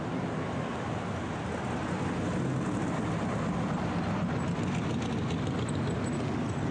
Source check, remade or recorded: recorded